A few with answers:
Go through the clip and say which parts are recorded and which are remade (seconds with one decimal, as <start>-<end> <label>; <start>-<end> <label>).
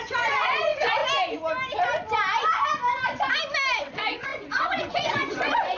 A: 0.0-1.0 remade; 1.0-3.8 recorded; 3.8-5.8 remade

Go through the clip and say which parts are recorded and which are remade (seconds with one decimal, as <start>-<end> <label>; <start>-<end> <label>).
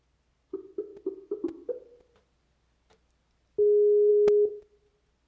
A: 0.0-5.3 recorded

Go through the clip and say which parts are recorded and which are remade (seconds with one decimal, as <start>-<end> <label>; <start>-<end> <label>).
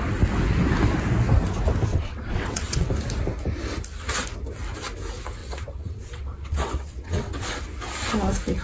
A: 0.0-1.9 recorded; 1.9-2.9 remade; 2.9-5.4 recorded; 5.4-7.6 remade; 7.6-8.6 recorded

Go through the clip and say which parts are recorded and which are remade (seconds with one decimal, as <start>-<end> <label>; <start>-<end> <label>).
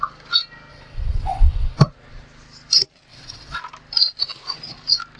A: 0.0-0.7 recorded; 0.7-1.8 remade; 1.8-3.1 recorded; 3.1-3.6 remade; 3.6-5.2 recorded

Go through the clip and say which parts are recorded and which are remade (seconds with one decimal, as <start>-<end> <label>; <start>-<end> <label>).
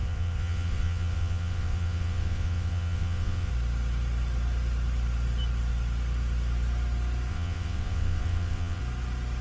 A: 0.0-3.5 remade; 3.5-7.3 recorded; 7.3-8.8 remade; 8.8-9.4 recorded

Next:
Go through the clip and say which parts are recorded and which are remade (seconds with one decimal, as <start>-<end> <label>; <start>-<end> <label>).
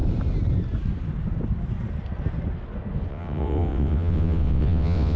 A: 0.0-3.1 recorded; 3.1-5.2 remade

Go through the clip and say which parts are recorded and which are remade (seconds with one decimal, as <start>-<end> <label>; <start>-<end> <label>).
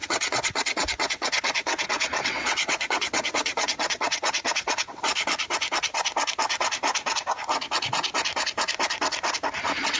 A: 0.0-5.0 remade; 5.0-10.0 recorded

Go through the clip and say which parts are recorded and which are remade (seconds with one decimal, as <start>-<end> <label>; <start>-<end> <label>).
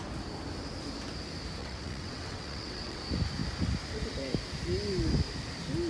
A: 0.0-1.6 recorded; 1.6-3.0 remade; 3.0-5.9 recorded